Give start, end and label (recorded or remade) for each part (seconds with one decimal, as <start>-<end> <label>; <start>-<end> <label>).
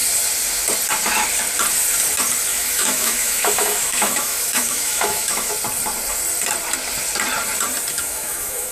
0.0-2.5 recorded; 2.5-5.5 remade; 5.5-7.9 recorded; 7.9-8.7 remade